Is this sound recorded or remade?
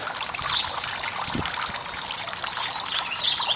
recorded